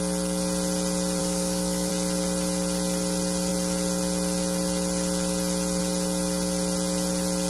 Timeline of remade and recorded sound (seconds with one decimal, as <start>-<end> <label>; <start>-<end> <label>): 0.0-1.2 recorded; 1.2-1.9 remade; 1.9-7.5 recorded